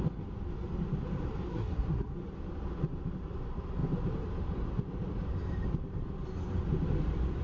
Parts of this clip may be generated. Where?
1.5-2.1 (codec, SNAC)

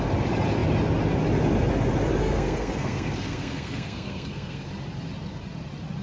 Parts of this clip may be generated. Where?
2.2-4.7 (codec, SNAC)

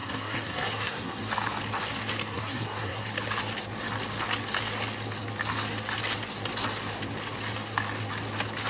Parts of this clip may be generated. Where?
0.0-1.2 (codec, SNAC); 2.2-3.1

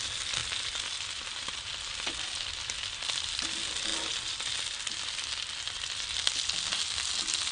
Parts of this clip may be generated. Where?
none

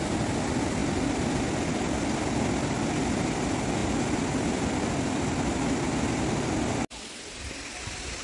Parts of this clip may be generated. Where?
none

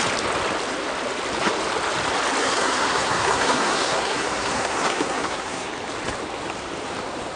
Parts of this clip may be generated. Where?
2.4-5.7 (codec, SNAC)

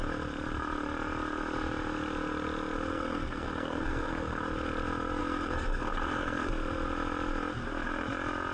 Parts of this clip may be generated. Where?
2.9-4.4 (codec, SNAC); 5.2-6.5

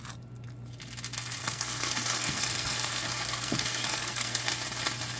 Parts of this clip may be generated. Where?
1.4-4.5 (codec, SNAC)